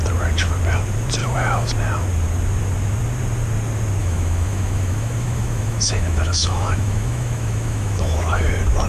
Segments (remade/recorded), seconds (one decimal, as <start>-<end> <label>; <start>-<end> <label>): 0.0-1.2 recorded; 1.2-1.7 remade; 1.7-4.0 recorded; 4.0-8.5 remade; 8.5-8.9 recorded